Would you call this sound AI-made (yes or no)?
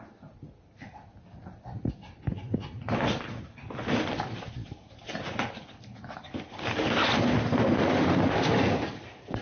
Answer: no